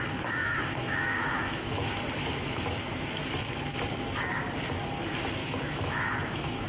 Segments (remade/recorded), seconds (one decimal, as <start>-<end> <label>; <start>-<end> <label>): 0.0-0.4 recorded; 0.4-1.9 remade; 1.9-5.4 recorded; 5.4-6.7 remade